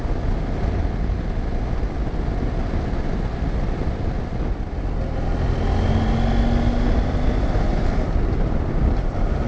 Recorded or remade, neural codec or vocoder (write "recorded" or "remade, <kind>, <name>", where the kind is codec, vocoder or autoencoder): recorded